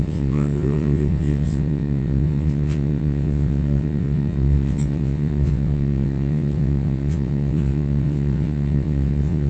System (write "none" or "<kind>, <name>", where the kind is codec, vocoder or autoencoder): vocoder, WaveNeXt